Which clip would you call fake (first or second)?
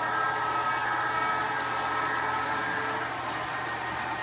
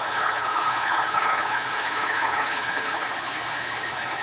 second